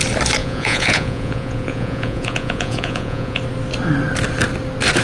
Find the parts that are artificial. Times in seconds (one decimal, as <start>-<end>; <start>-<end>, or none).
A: 0.4-3.4